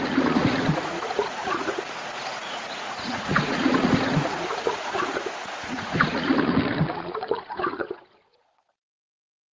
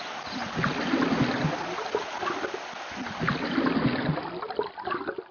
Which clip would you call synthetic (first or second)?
first